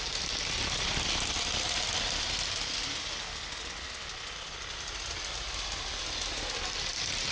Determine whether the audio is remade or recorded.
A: recorded